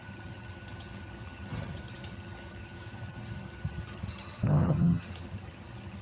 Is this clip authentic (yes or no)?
no